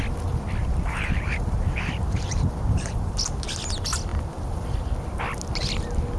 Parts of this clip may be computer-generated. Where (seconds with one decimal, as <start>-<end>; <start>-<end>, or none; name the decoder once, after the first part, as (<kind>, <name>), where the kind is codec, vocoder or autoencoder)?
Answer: 0.6-3.1 (vocoder, BigVGAN v2)